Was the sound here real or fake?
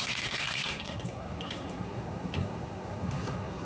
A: fake